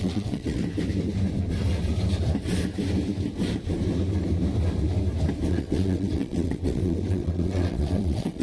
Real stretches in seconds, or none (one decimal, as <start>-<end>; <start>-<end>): 0.6-5.5